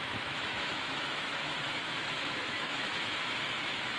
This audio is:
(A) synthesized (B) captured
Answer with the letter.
A